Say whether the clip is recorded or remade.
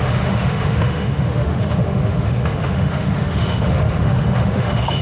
remade